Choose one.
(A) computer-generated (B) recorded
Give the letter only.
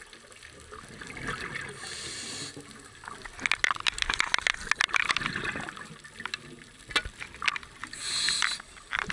B